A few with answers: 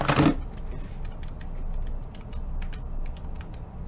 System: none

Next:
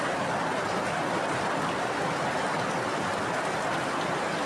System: none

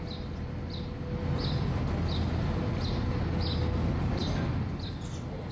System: none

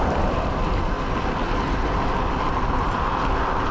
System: none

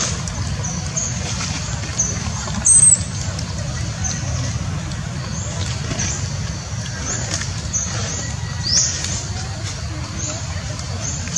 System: none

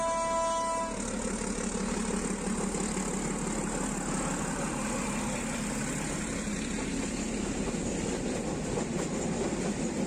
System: none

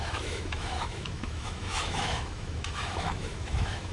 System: autoencoder, DAC-VAE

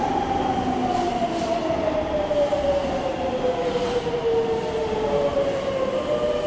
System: none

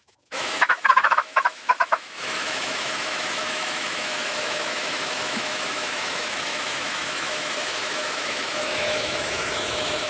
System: autoencoder, DAC-VAE